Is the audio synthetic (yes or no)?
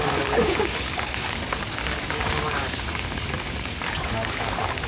yes